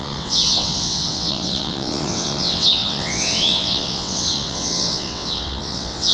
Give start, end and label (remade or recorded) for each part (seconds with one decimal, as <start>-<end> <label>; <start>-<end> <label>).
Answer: 0.0-6.1 remade